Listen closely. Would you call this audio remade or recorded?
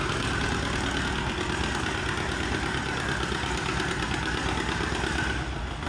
recorded